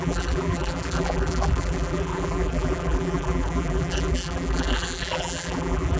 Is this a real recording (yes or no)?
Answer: no